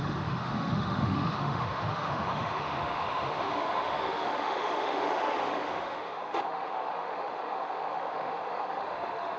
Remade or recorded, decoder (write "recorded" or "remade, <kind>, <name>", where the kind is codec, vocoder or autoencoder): remade, autoencoder, DAC-VAE